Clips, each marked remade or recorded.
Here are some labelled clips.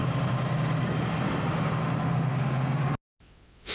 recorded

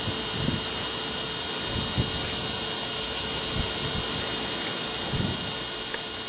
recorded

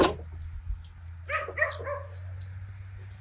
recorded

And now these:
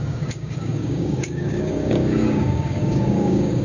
remade